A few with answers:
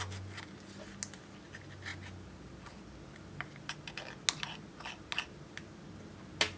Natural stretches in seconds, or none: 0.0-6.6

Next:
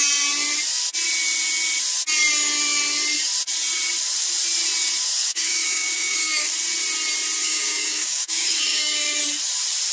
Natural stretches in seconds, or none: 0.0-5.2; 6.5-7.4; 9.2-9.9

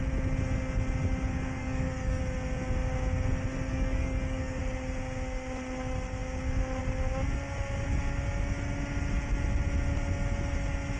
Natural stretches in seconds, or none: 0.0-1.6; 2.2-3.7; 4.6-11.0

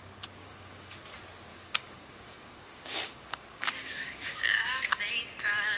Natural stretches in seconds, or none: 0.0-0.4; 1.0-1.5; 5.0-5.8

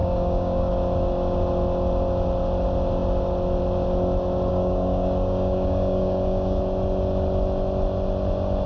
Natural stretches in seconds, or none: 0.7-4.5; 6.6-8.7

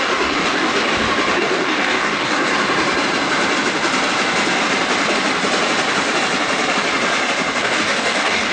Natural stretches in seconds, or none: 0.7-1.4; 2.5-7.6

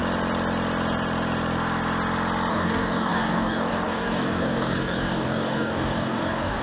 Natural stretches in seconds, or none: 0.0-2.5

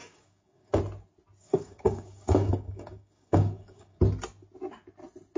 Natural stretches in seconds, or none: 0.8-1.4; 4.0-5.4